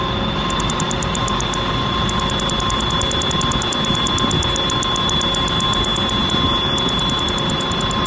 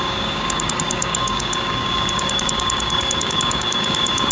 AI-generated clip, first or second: second